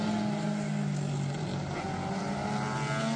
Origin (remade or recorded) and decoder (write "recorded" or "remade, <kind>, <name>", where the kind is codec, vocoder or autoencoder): recorded